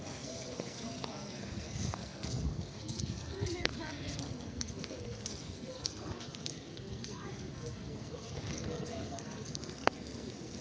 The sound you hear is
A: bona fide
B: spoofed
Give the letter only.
B